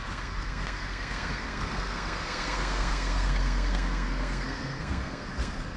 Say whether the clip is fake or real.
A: fake